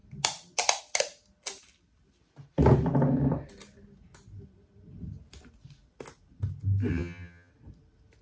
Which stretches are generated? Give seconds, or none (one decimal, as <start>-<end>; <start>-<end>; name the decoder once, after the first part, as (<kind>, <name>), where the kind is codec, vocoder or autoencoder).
6.9-7.5 (vocoder, HiFi-GAN)